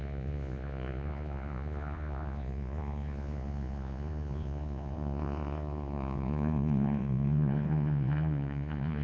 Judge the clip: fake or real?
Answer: fake